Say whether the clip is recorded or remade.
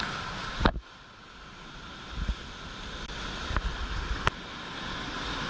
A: recorded